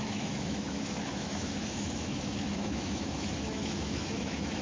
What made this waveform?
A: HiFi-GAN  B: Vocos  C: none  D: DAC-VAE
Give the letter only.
D